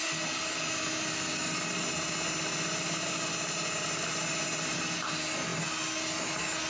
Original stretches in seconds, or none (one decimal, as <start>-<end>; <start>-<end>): 0.0-6.7